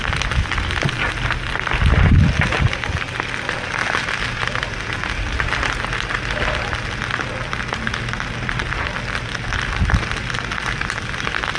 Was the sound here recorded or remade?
recorded